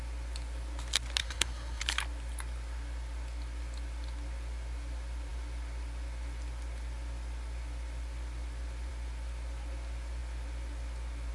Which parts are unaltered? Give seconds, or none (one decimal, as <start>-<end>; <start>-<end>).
0.0-1.2; 1.8-11.3